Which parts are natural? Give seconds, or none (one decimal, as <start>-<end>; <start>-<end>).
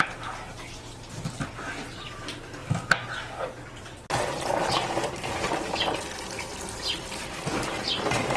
0.0-8.4